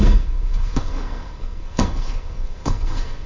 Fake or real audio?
fake